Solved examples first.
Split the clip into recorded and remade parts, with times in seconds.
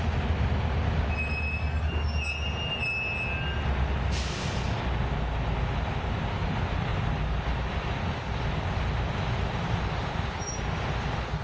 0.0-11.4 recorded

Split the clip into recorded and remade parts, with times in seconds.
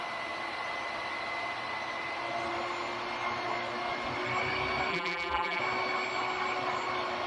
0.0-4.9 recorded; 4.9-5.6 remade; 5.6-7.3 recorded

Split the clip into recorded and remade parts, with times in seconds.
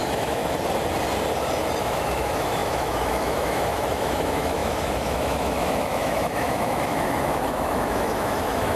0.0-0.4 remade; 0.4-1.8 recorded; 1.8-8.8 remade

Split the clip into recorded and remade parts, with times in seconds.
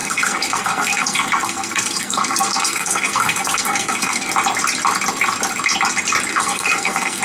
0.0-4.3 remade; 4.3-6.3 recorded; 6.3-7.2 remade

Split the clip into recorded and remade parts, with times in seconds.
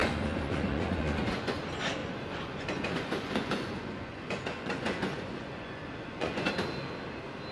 0.0-1.6 remade; 1.6-2.0 recorded; 2.0-6.5 remade; 6.5-7.5 recorded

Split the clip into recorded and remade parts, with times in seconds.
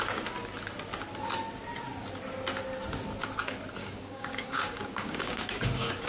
0.0-3.8 recorded; 3.8-6.1 remade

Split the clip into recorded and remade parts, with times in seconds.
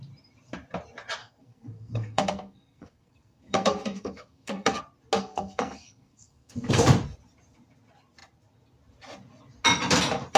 0.0-1.2 recorded; 1.2-4.8 remade; 4.8-5.2 recorded; 5.2-6.8 remade; 6.8-10.4 recorded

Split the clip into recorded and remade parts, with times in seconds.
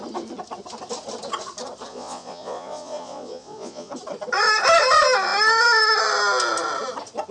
0.0-1.9 recorded; 1.9-3.9 remade; 3.9-7.3 recorded